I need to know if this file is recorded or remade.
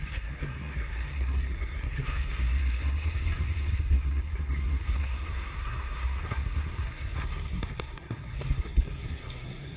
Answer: remade